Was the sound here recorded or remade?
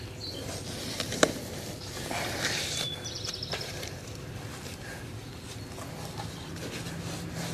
recorded